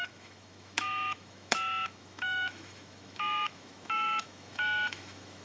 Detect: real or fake fake